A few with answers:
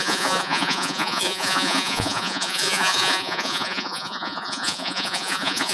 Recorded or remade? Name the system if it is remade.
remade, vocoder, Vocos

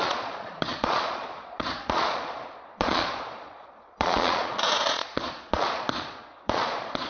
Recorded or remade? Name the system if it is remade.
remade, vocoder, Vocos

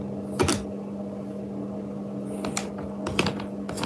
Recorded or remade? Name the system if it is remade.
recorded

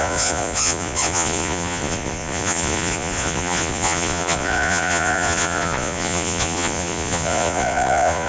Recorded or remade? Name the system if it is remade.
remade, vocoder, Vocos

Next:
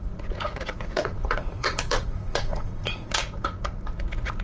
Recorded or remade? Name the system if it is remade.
remade, vocoder, Vocos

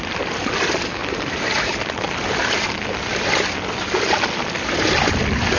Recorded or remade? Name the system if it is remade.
recorded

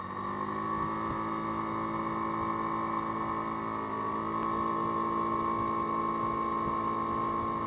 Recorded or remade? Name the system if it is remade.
recorded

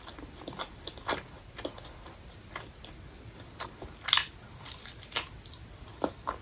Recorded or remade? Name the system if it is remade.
recorded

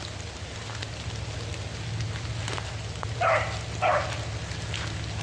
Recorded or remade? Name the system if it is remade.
recorded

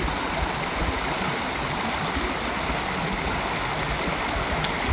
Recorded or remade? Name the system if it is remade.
recorded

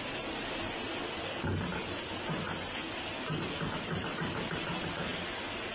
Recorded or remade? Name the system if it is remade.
recorded